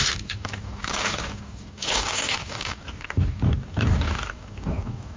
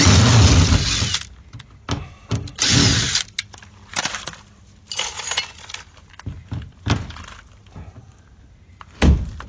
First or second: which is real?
second